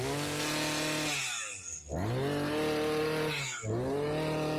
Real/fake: real